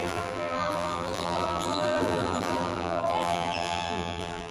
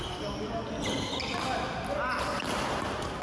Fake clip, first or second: first